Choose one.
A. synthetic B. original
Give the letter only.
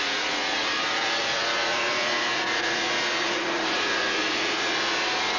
A